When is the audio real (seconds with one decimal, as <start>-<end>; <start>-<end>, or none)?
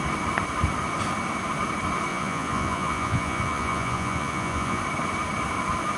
0.0-2.1; 4.8-6.0